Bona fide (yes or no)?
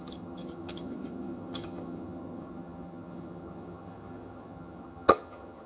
no